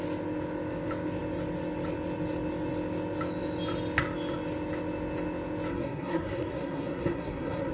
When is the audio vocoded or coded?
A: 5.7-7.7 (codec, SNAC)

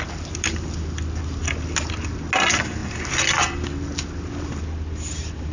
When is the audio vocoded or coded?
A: none

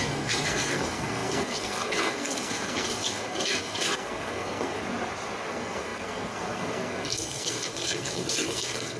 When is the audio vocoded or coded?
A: 0.0-4.8 (codec, SNAC); 5.5-9.0